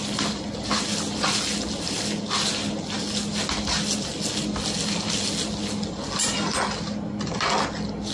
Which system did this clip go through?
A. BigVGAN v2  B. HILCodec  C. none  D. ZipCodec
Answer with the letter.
C